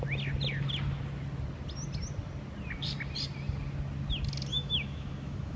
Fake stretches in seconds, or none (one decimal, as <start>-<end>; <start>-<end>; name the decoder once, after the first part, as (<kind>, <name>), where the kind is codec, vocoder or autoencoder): 4.5-5.6 (autoencoder, DAC-VAE)